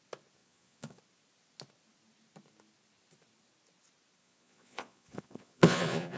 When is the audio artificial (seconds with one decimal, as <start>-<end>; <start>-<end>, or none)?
0.4-1.0; 4.2-6.2